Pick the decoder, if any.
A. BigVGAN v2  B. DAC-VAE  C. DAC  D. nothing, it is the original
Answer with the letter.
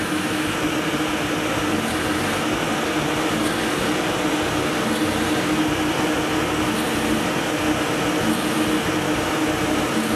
D